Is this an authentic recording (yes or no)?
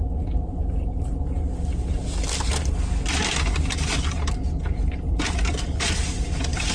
yes